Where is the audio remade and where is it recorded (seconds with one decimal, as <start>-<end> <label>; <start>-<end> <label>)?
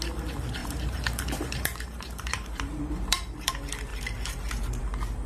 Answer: 0.0-0.6 recorded; 0.6-3.5 remade; 3.5-3.9 recorded; 3.9-4.8 remade; 4.8-5.3 recorded